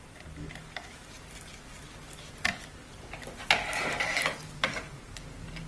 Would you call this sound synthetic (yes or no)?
no